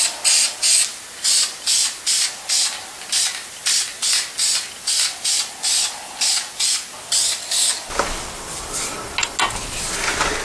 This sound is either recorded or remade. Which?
recorded